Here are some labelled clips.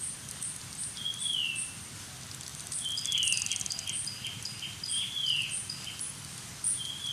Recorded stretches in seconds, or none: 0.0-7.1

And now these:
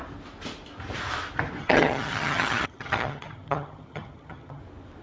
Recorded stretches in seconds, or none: 0.0-1.6; 4.6-5.0

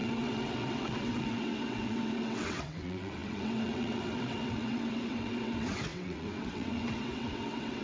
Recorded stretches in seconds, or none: none

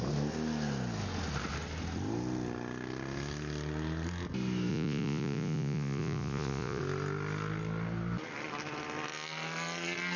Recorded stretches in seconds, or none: 0.0-4.7; 6.8-10.2

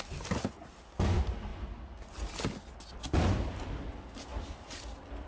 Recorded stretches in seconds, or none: 0.0-5.3

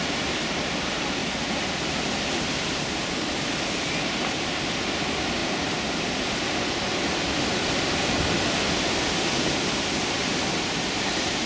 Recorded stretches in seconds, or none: 0.0-11.5

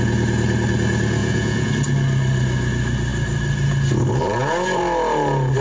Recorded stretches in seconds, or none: 0.0-1.2; 1.7-5.6